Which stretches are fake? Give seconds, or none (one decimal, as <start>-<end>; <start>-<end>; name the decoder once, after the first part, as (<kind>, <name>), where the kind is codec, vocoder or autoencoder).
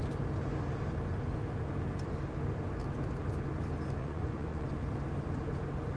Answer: 4.0-4.7 (vocoder, Vocos)